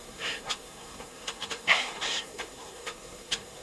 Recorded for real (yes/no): no